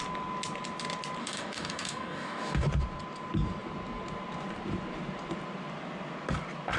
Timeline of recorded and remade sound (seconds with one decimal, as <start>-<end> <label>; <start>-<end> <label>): 0.0-1.2 recorded; 1.2-2.6 remade; 2.6-6.8 recorded